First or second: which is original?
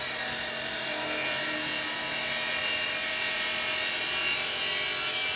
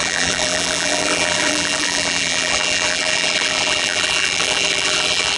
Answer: first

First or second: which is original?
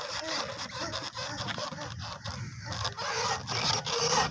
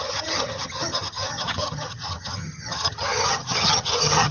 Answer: first